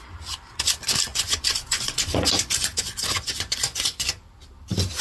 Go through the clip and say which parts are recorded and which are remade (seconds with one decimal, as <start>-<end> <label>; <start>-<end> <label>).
0.0-1.1 recorded; 1.1-4.1 remade; 4.1-5.0 recorded